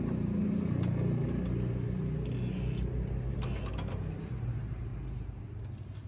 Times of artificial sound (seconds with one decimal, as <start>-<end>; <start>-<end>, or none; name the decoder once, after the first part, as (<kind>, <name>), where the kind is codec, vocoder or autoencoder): none